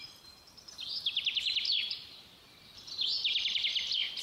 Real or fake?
fake